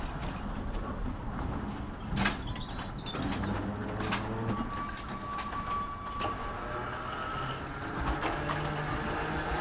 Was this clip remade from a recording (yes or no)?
no